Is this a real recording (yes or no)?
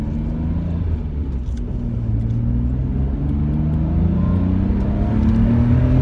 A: yes